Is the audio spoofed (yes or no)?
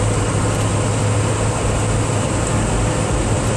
no